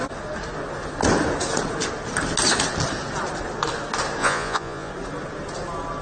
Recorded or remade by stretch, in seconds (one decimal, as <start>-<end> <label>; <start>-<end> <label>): 0.0-4.2 recorded; 4.2-4.9 remade; 4.9-6.0 recorded